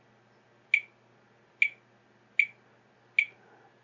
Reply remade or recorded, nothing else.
recorded